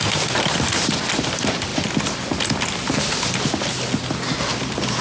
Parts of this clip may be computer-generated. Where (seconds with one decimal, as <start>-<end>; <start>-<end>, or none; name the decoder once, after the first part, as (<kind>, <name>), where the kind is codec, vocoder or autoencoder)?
none